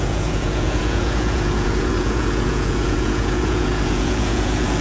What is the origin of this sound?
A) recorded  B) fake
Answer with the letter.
B